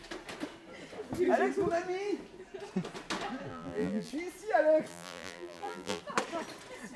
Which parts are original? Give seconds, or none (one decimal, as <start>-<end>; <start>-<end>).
0.0-3.5; 4.1-4.9; 6.0-7.0